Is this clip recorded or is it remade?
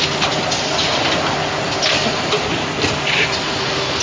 recorded